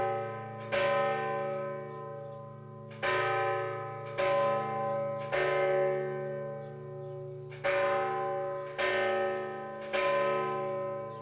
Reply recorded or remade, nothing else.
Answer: recorded